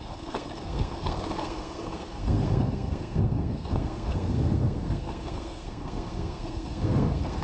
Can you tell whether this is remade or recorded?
remade